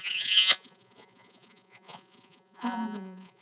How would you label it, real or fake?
fake